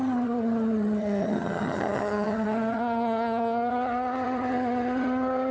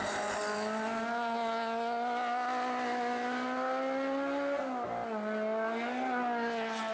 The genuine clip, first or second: second